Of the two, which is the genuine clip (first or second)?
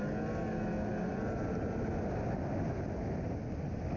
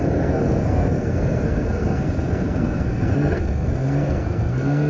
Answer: first